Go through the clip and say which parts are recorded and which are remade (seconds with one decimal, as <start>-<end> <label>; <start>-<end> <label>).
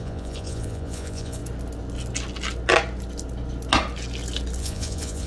0.0-1.4 remade; 1.4-4.6 recorded; 4.6-5.3 remade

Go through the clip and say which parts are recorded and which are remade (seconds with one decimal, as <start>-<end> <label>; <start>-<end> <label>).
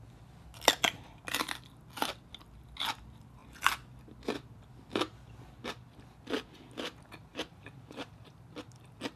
0.0-7.3 recorded; 7.3-8.3 remade; 8.3-9.2 recorded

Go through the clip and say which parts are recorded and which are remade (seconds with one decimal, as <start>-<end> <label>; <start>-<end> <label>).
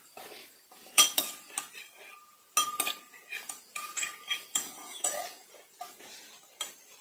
0.0-0.4 recorded; 0.4-1.5 remade; 1.5-3.1 recorded; 3.1-4.1 remade; 4.1-4.5 recorded; 4.5-6.2 remade; 6.2-7.0 recorded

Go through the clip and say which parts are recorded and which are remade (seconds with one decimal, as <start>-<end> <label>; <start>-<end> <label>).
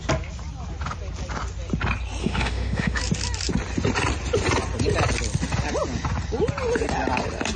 0.0-2.2 recorded; 2.2-3.0 remade; 3.0-7.6 recorded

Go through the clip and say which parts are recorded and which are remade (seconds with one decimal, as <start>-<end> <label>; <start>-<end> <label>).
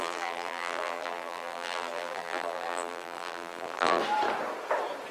0.0-4.0 remade; 4.0-5.1 recorded